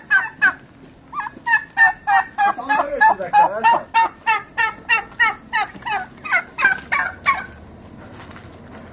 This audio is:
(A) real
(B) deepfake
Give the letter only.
A